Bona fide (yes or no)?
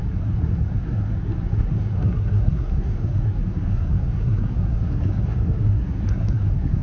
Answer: no